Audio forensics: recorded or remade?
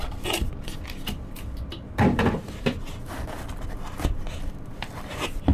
remade